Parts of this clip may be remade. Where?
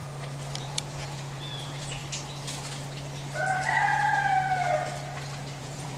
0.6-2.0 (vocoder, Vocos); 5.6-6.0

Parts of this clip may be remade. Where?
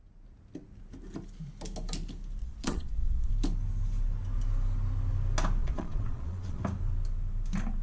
2.4-3.3 (vocoder, Vocos); 5.6-6.6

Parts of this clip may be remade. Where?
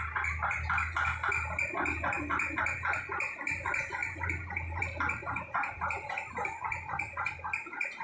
none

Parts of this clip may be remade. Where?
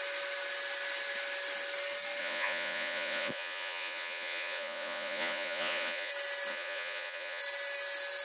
2.2-6.1 (vocoder, Vocos); 6.5-7.4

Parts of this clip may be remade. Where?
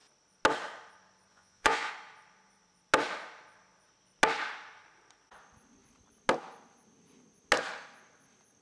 1.3-1.9 (vocoder, Vocos)